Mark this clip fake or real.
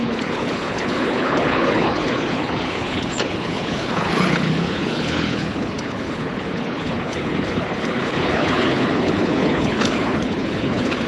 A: fake